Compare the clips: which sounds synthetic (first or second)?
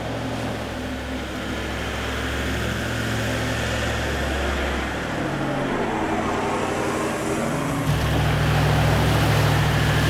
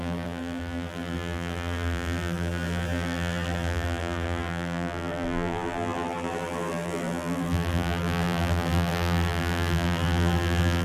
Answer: second